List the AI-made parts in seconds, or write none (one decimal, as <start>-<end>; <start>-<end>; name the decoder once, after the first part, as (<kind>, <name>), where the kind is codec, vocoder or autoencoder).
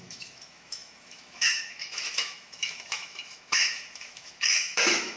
0.0-5.2 (autoencoder, DAC-VAE)